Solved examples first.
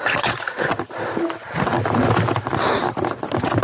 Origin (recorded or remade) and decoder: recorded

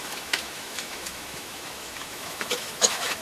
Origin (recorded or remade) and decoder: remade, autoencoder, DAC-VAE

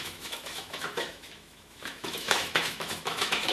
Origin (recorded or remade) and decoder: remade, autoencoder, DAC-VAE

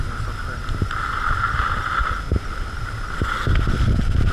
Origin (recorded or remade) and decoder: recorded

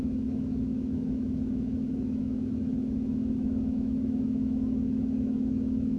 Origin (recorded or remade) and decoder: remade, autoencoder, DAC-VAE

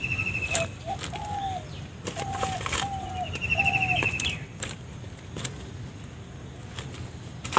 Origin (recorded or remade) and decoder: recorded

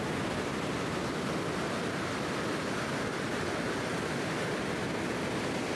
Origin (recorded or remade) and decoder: recorded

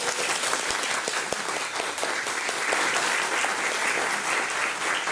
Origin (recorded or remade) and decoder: recorded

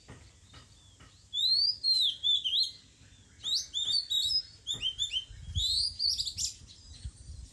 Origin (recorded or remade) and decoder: recorded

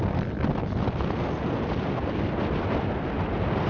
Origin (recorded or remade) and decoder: recorded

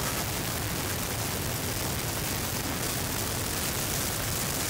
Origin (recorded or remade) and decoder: recorded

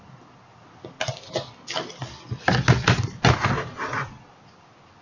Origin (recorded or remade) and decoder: recorded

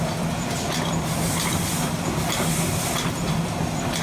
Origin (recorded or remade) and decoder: recorded